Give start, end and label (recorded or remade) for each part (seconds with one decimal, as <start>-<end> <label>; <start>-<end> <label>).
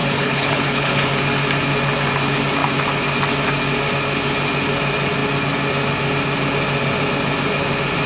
0.0-1.1 remade; 1.1-8.1 recorded